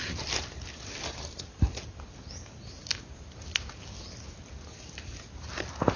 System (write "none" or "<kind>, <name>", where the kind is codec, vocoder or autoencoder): none